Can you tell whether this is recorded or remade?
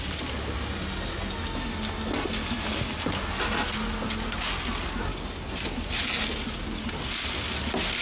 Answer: recorded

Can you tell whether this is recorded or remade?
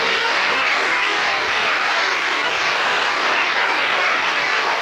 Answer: remade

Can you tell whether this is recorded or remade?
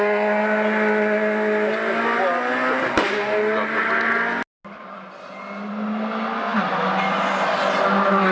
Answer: recorded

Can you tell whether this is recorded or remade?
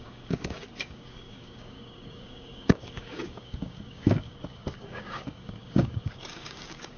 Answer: remade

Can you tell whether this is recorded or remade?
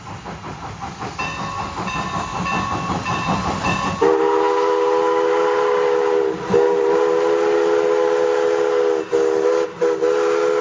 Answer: recorded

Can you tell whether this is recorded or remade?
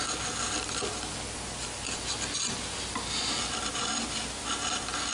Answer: recorded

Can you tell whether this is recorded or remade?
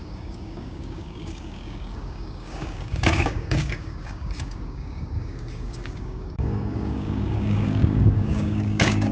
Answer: remade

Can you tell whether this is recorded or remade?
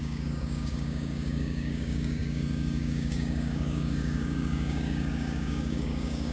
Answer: remade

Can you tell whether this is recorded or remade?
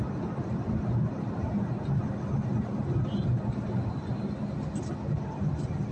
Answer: recorded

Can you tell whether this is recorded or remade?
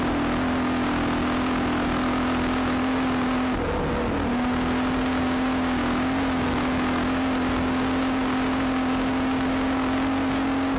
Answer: recorded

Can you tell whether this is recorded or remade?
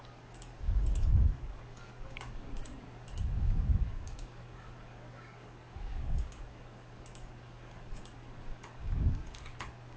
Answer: remade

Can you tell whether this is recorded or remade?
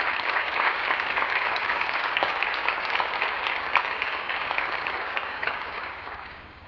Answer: remade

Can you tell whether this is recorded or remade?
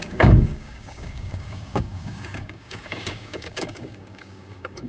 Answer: remade